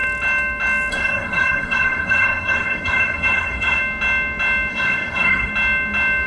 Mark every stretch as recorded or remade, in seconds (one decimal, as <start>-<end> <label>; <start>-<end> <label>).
0.0-0.9 recorded; 0.9-3.8 remade; 3.8-4.7 recorded; 4.7-5.5 remade; 5.5-6.3 recorded